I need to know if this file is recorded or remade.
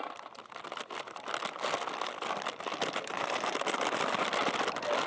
recorded